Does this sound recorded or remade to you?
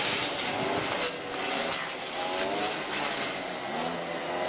recorded